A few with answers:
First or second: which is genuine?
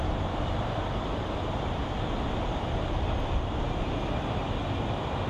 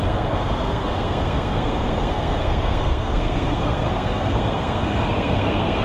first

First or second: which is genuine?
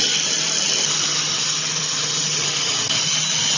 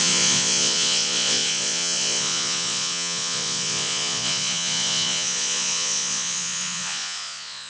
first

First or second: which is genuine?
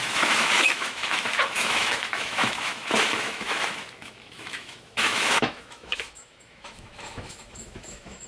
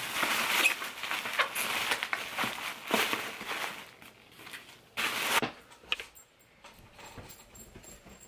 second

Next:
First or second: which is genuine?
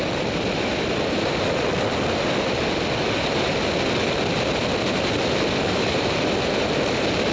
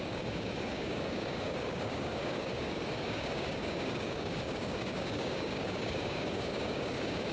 first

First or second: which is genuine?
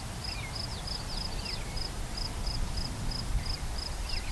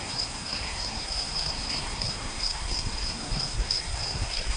first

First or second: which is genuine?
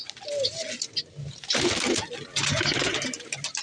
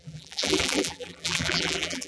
first